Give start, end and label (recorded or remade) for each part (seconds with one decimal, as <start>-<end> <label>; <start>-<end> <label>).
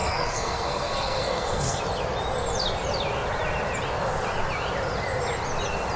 0.0-1.8 remade; 1.8-6.0 recorded